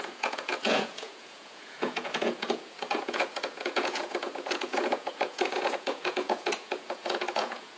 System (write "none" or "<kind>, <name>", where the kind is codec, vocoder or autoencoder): vocoder, Vocos